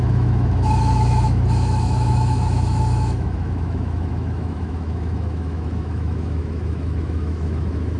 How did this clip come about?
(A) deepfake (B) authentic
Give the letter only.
A